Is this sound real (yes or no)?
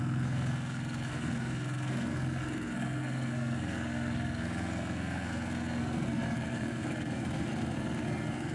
no